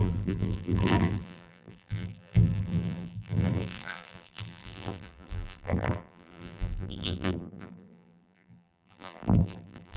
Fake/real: fake